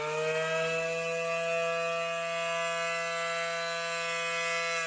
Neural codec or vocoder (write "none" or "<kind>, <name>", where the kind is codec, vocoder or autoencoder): none